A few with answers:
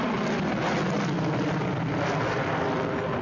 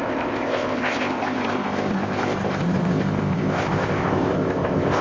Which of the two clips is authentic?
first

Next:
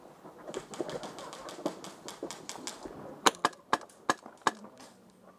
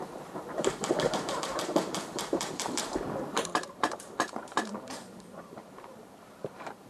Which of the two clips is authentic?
first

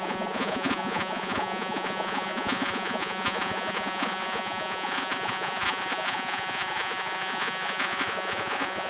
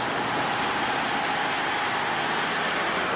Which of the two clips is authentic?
second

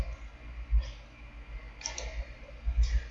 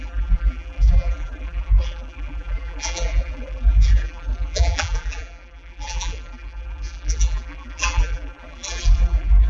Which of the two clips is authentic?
first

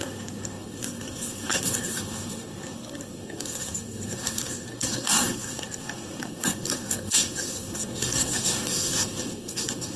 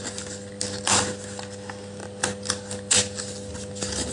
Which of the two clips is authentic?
second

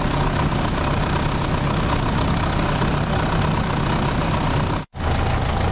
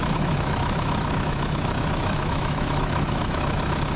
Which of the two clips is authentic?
first